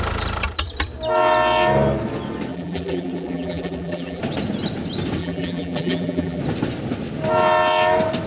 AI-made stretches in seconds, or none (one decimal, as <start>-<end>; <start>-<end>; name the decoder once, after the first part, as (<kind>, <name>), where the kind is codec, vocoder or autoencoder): 2.5-4.2 (vocoder, BigVGAN v2); 5.2-6.4